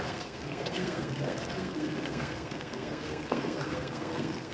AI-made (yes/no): yes